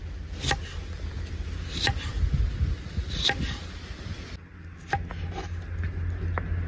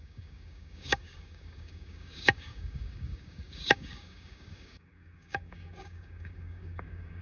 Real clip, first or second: first